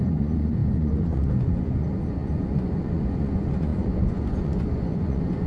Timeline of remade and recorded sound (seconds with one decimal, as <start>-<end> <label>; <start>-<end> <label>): 0.0-5.5 remade